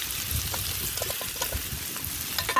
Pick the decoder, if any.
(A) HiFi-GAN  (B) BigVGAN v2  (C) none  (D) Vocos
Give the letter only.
C